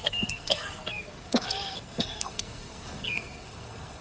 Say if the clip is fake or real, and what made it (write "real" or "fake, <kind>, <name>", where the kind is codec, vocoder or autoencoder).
fake, codec, SNAC